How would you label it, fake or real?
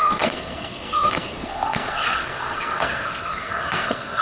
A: fake